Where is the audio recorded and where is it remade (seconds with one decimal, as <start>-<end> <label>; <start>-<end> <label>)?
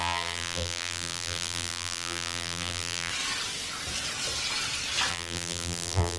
0.0-3.1 remade; 3.1-5.1 recorded; 5.1-6.2 remade